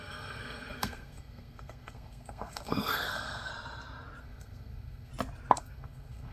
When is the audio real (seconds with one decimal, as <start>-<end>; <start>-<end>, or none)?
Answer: 3.5-4.2; 5.1-5.6